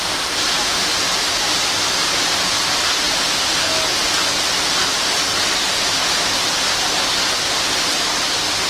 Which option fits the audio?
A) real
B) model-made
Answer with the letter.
A